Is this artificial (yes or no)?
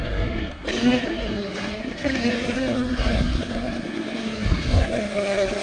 yes